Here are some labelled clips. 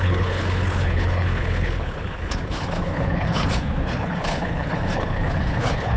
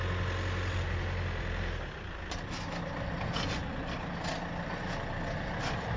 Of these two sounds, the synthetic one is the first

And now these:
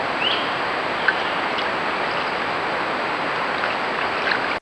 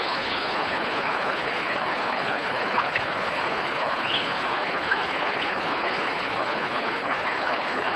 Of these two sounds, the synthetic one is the second